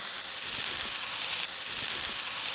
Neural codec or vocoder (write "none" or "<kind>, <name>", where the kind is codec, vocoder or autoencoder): none